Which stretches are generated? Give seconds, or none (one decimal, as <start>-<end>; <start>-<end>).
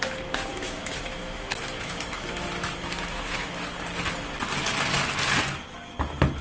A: 0.5-3.6